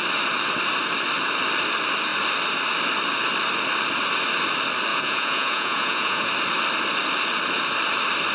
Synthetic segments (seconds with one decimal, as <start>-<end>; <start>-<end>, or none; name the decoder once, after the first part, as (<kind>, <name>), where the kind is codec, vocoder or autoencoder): 4.9-6.3 (vocoder, Vocos)